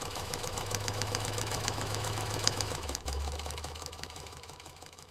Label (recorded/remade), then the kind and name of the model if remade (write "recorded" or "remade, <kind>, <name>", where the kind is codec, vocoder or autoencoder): remade, autoencoder, DAC-VAE